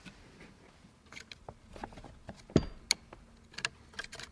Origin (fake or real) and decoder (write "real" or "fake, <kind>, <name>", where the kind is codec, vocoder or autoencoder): real